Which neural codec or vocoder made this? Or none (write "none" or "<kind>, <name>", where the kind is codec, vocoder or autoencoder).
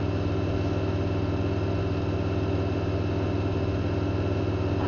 none